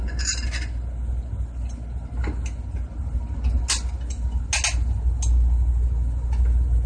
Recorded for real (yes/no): yes